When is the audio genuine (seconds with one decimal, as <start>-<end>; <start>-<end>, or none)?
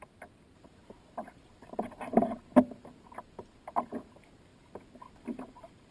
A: 0.0-0.8; 2.3-5.9